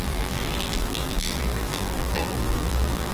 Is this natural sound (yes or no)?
no